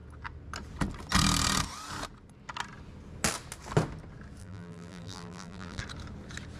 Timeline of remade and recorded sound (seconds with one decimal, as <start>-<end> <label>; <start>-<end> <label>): 0.0-4.4 recorded; 4.4-5.8 remade; 5.8-6.6 recorded